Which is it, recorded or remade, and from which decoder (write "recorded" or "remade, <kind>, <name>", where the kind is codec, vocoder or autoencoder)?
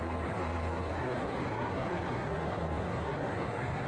remade, codec, SNAC